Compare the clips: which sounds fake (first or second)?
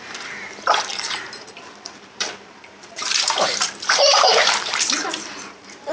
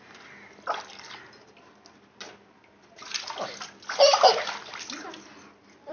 first